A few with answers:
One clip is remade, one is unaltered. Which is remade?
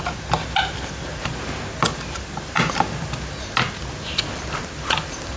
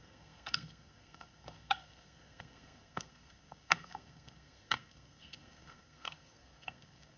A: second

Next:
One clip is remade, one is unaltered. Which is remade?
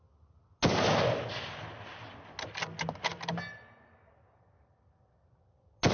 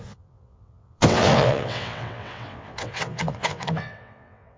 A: second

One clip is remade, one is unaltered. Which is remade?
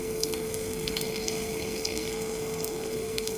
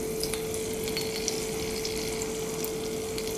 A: first